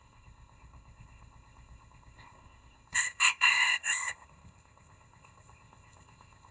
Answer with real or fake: fake